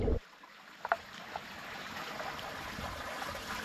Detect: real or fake real